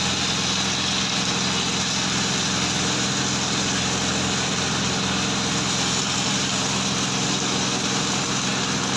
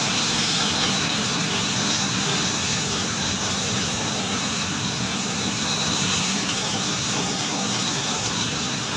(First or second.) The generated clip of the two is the second